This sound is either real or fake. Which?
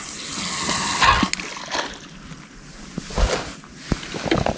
real